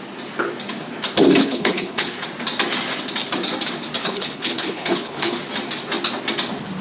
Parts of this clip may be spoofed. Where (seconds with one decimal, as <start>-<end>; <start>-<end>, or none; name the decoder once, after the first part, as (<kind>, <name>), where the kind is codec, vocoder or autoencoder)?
1.4-2.2 (codec, HILCodec); 4.0-5.4